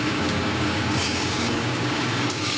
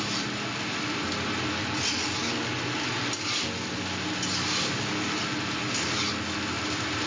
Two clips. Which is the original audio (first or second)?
second